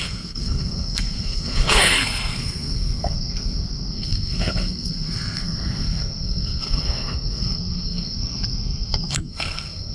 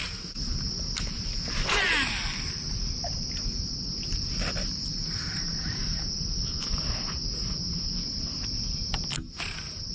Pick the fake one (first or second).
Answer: first